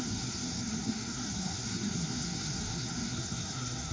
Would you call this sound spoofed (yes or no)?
yes